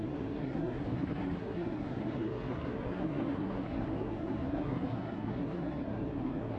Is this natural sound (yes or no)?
no